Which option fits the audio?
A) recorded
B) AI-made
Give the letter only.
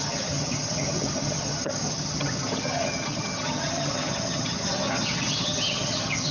B